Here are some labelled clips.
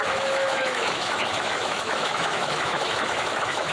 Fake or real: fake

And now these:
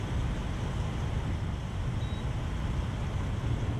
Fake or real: real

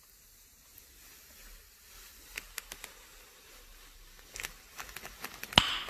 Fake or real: real